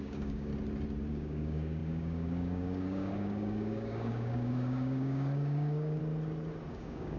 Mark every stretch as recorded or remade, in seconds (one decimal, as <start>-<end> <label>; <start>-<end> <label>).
0.0-0.5 remade; 0.5-1.1 recorded; 1.1-6.0 remade; 6.0-6.7 recorded; 6.7-7.2 remade